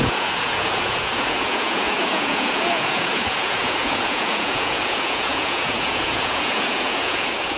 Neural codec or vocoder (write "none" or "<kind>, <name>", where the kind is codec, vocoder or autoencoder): vocoder, Vocos